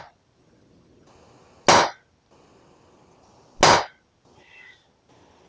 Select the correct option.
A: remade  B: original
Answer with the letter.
B